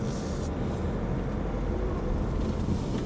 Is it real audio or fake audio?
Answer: real